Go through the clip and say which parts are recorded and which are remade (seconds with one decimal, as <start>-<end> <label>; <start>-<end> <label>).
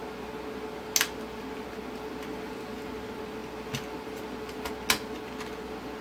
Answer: 0.0-6.0 recorded